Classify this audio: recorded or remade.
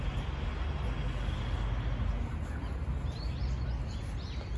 recorded